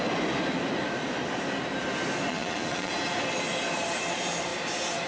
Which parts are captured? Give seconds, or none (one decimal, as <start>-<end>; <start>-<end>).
0.0-2.3; 2.9-5.1